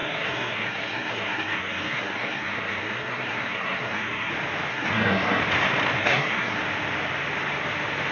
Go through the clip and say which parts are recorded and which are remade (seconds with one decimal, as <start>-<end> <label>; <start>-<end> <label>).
0.0-4.3 remade; 4.3-4.7 recorded; 4.7-5.4 remade; 5.4-6.0 recorded; 6.0-6.6 remade; 6.6-8.1 recorded